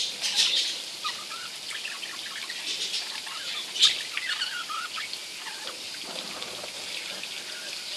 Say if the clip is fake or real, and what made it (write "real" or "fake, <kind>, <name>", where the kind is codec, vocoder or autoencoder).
real